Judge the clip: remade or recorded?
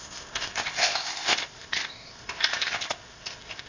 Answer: remade